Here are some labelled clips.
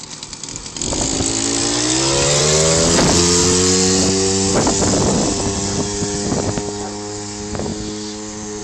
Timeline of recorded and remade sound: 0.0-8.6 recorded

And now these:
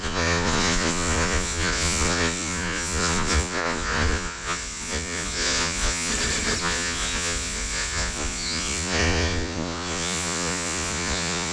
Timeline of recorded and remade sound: 0.0-6.1 remade; 6.1-6.6 recorded; 6.6-11.5 remade